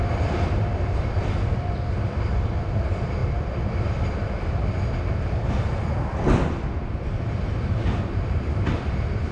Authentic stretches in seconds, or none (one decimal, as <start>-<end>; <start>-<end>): none